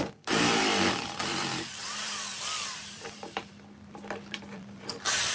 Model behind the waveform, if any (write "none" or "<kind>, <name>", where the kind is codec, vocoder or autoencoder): vocoder, BigVGAN v2